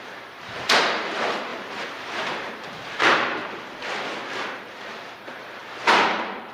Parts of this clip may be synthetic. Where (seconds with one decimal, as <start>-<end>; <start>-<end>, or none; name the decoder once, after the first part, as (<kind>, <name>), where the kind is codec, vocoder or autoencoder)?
0.0-3.4 (vocoder, BigVGAN v2); 4.5-5.6; 6.1-6.5